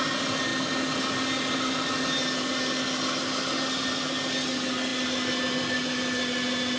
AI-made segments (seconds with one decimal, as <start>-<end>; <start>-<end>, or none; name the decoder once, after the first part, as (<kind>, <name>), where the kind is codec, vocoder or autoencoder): none